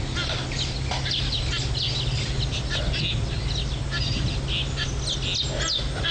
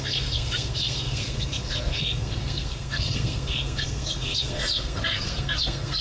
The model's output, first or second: second